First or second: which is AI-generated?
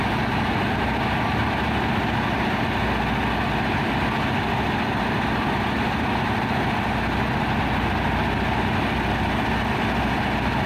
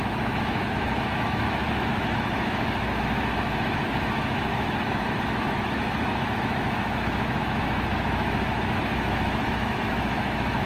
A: second